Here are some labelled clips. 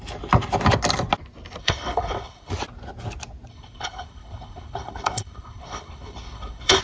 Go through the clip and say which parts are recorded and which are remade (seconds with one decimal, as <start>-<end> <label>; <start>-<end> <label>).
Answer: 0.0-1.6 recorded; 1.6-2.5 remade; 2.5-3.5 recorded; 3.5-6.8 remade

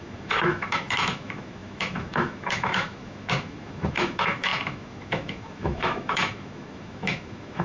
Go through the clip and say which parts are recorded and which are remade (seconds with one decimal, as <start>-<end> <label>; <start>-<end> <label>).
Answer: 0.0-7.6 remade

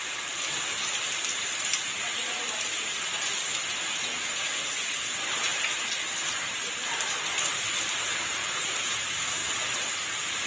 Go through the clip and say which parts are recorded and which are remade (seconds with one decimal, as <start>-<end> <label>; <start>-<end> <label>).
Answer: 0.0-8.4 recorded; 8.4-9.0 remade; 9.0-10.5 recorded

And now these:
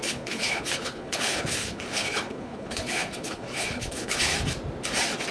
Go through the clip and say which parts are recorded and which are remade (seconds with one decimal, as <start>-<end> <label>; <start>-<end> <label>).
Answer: 0.0-4.3 remade; 4.3-5.3 recorded

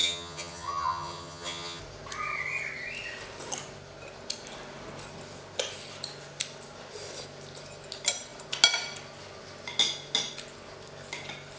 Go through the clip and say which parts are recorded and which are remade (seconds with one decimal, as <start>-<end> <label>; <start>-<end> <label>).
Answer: 0.0-1.8 remade; 1.8-11.6 recorded